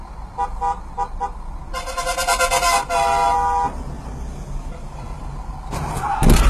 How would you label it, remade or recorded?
recorded